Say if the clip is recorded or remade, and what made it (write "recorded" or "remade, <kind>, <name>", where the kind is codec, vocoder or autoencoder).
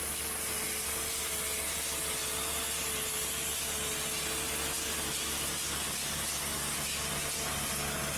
recorded